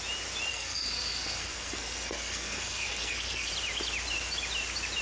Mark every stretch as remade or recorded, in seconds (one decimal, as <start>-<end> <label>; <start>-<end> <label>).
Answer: 0.0-0.5 recorded; 0.5-3.5 remade; 3.5-5.0 recorded